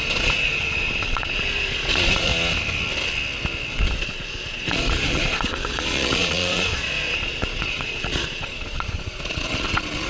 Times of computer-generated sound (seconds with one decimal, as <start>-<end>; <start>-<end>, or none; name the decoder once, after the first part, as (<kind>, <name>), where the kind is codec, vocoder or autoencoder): 0.0-2.3 (vocoder, Vocos); 4.0-10.1